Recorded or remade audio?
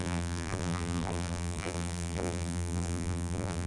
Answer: remade